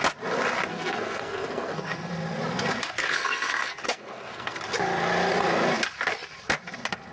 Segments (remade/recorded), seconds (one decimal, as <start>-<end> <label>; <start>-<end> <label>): 0.0-0.7 recorded; 0.7-2.1 remade; 2.1-2.8 recorded; 2.8-4.6 remade; 4.6-7.1 recorded